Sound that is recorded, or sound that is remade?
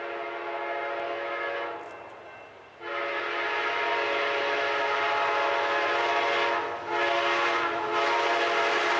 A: recorded